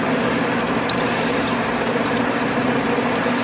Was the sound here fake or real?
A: fake